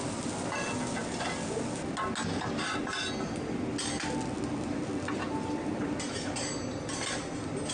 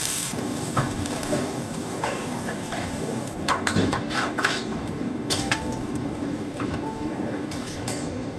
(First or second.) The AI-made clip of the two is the second